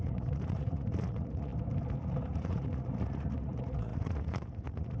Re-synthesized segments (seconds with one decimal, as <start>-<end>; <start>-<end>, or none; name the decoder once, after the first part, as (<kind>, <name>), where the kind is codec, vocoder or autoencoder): 0.0-1.5 (vocoder, Vocos); 2.0-5.0